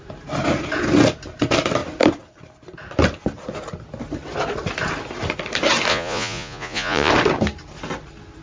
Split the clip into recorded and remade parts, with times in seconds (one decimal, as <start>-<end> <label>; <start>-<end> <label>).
0.0-5.9 recorded; 5.9-7.1 remade; 7.1-8.4 recorded